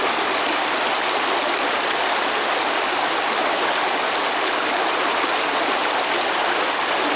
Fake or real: real